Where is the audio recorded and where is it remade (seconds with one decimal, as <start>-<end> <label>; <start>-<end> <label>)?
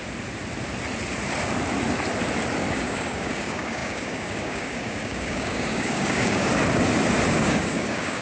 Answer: 0.0-2.7 recorded; 2.7-6.5 remade; 6.5-7.3 recorded; 7.3-8.2 remade